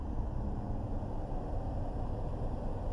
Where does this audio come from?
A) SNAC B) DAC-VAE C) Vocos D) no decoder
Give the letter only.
D